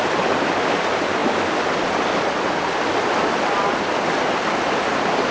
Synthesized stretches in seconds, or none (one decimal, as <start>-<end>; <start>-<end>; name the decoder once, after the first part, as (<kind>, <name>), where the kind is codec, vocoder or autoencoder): none